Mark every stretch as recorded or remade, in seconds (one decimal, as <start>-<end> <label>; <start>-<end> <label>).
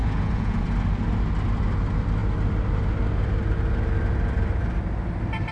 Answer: 0.0-0.6 remade; 0.6-5.5 recorded